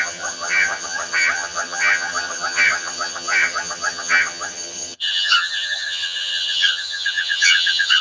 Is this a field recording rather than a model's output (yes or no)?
no